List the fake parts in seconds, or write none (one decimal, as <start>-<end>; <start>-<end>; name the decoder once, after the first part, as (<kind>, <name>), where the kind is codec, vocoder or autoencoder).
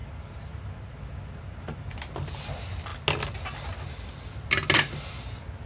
none